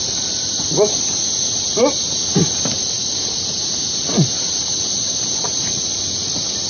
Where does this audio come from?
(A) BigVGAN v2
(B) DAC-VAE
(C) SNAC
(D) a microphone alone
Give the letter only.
D